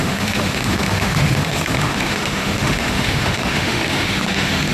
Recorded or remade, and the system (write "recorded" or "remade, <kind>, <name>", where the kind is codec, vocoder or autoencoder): remade, autoencoder, DAC-VAE